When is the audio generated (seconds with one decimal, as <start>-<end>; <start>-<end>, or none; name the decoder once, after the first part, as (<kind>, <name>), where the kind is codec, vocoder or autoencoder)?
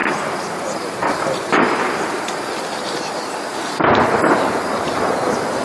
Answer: 0.0-3.4 (vocoder, BigVGAN v2)